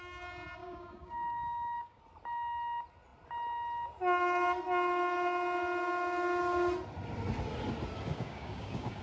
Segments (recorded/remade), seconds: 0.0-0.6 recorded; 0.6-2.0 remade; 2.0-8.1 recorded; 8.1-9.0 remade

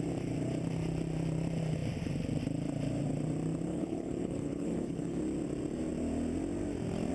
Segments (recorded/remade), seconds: 0.0-3.7 recorded; 3.7-5.2 remade; 5.2-7.1 recorded

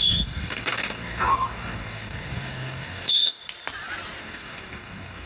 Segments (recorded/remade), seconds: 0.0-3.4 remade; 3.4-4.2 recorded; 4.2-5.3 remade

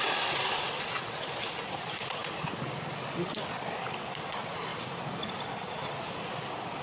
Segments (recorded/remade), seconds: 0.0-4.7 recorded; 4.7-5.9 remade; 5.9-6.8 recorded

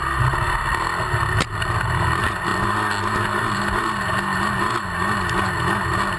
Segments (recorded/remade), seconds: 0.0-6.2 recorded